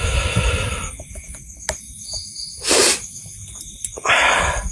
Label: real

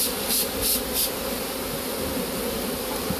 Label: real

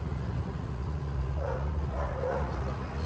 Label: fake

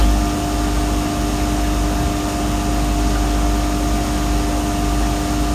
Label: real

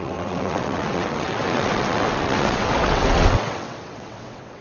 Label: fake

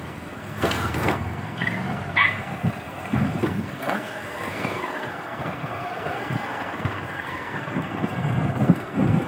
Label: fake